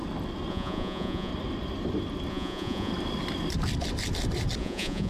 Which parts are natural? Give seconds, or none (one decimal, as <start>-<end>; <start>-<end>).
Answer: 0.0-0.5; 1.3-2.3; 2.9-4.6